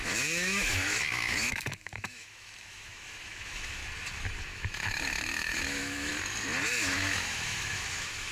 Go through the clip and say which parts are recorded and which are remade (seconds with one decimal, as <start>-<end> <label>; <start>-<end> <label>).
0.0-3.8 remade; 3.8-4.4 recorded; 4.4-6.1 remade; 6.1-6.7 recorded; 6.7-8.3 remade